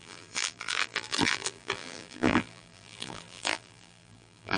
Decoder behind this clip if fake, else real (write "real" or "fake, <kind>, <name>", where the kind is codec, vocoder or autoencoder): fake, vocoder, BigVGAN v2